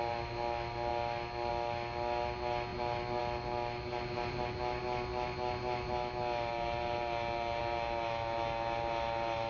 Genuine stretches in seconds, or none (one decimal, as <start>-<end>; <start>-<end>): 0.0-9.5